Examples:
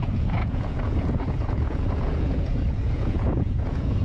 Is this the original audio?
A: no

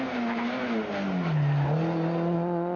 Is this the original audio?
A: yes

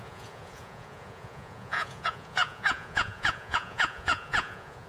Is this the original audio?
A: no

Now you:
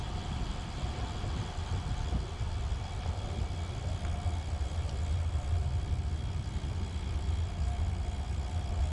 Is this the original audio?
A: yes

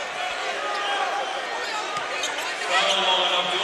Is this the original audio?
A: yes